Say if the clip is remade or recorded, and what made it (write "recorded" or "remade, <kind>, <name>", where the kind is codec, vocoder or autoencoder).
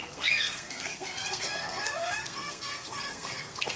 remade, codec, SNAC